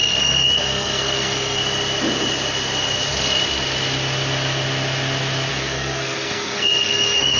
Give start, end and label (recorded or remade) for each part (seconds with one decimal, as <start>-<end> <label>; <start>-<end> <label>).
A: 0.0-1.6 remade; 1.6-5.5 recorded; 5.5-7.4 remade

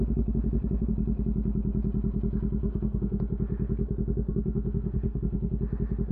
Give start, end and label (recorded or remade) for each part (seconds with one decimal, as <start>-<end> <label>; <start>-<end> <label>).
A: 0.0-2.6 recorded; 2.6-3.2 remade; 3.2-4.3 recorded; 4.3-5.5 remade; 5.5-6.1 recorded

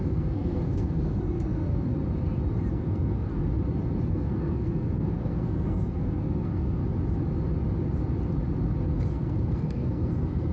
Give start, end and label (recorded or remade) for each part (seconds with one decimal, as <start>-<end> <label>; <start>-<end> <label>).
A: 0.0-1.6 remade; 1.6-2.7 recorded; 2.7-3.3 remade; 3.3-4.1 recorded; 4.1-6.8 remade; 6.8-9.1 recorded; 9.1-10.5 remade

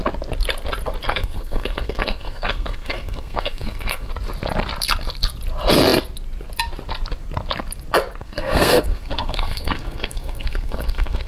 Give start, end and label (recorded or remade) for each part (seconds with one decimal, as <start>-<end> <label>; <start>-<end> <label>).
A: 0.0-1.1 recorded; 1.1-4.1 remade; 4.1-8.2 recorded; 8.2-11.3 remade

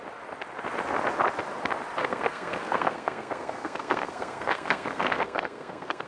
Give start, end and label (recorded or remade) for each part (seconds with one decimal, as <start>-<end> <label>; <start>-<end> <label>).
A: 0.0-2.0 recorded; 2.0-6.1 remade

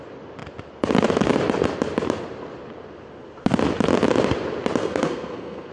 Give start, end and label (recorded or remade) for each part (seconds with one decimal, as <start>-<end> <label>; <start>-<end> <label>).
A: 0.0-4.8 recorded; 4.8-5.7 remade